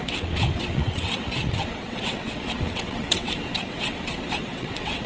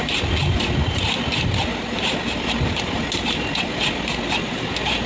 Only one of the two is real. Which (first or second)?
second